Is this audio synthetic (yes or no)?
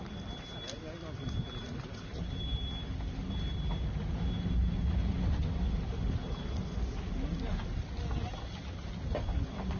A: no